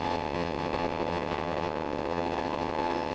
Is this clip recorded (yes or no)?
no